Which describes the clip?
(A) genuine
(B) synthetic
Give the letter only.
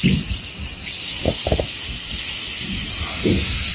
A